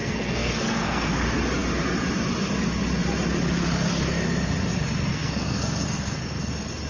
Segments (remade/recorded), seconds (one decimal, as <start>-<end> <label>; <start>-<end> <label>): 0.0-1.2 remade; 1.2-5.1 recorded; 5.1-6.5 remade; 6.5-6.9 recorded